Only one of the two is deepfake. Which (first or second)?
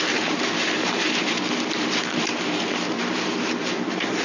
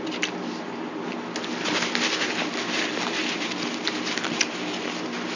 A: first